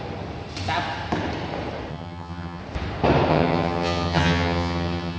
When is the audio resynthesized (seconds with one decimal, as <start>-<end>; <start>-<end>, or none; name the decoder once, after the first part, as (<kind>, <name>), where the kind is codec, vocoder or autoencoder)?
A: 1.9-2.6 (vocoder, HiFi-GAN); 3.3-5.2